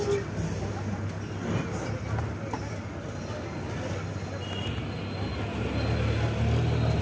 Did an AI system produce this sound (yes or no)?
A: no